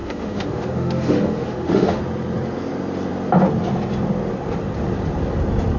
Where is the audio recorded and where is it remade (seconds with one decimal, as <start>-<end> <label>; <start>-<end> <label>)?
0.0-2.0 remade; 2.0-5.8 recorded